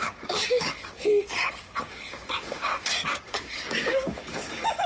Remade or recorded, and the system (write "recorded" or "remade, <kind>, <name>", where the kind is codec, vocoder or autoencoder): remade, codec, DAC